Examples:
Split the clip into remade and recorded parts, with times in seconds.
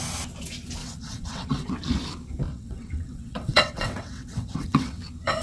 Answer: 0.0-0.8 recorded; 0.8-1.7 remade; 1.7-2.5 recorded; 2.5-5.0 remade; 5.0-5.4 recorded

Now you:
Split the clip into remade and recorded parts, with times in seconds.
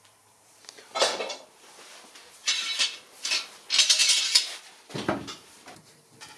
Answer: 0.0-2.4 recorded; 2.4-3.3 remade; 3.3-6.4 recorded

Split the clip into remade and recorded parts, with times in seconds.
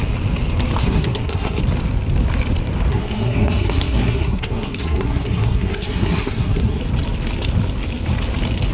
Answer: 0.0-0.8 recorded; 0.8-1.6 remade; 1.6-2.9 recorded; 2.9-6.8 remade; 6.8-8.7 recorded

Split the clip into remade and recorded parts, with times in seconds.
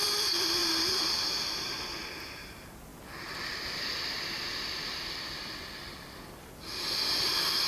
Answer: 0.0-4.5 recorded; 4.5-6.7 remade; 6.7-7.7 recorded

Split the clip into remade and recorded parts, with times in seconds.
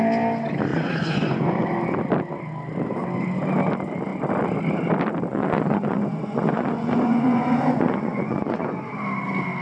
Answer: 0.0-0.7 recorded; 0.7-1.6 remade; 1.6-5.3 recorded; 5.3-8.9 remade; 8.9-9.6 recorded